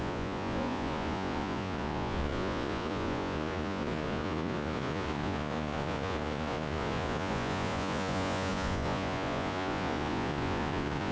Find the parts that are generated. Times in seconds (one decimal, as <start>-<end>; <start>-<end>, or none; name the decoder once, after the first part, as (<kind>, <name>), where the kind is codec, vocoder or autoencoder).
0.0-11.1 (vocoder, Vocos)